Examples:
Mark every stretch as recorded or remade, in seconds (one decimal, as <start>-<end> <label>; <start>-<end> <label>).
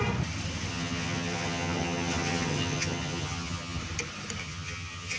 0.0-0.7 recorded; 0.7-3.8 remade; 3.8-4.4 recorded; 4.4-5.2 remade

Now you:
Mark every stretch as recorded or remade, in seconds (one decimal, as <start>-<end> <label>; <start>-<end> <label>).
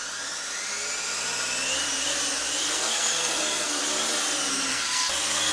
0.0-2.6 recorded; 2.6-3.8 remade; 3.8-4.7 recorded; 4.7-5.5 remade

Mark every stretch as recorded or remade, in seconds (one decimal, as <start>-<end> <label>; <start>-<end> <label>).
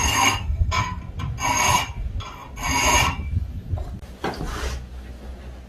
0.0-1.0 remade; 1.0-5.7 recorded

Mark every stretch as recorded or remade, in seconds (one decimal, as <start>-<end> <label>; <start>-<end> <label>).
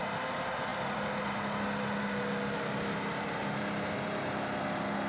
0.0-5.1 recorded